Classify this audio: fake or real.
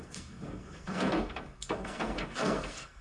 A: fake